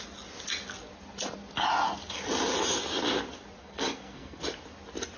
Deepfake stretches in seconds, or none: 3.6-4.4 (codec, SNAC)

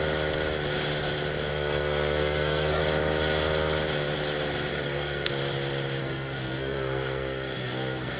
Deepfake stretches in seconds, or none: 1.5-2.8 (codec, SNAC); 4.7-5.3; 6.0-8.2

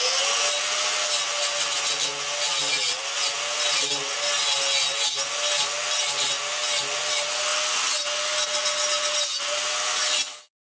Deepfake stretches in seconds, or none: none

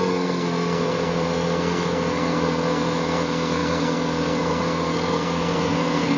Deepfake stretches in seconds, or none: 0.0-6.2 (codec, SNAC)

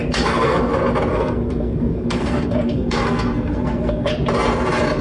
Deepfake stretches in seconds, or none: 0.0-0.7 (codec, SNAC); 1.1-4.1

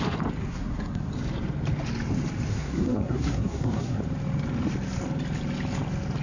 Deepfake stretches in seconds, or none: 0.4-1.1 (codec, SNAC); 2.5-4.0

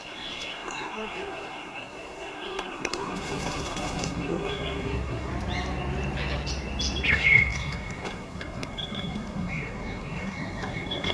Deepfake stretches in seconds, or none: 0.0-5.3 (codec, SNAC); 7.1-11.1

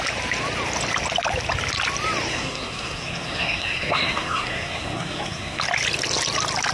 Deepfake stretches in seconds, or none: 2.3-5.6 (codec, SNAC)